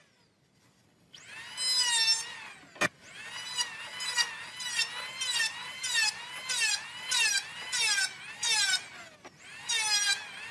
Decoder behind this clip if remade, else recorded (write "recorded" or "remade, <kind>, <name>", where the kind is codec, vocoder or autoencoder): recorded